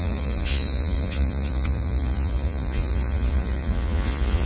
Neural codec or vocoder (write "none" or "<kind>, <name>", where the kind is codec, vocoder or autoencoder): vocoder, Vocos